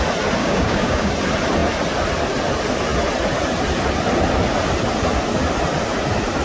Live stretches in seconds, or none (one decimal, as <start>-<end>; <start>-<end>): 0.0-0.4; 1.1-6.4